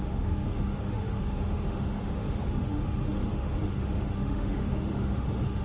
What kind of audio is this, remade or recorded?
remade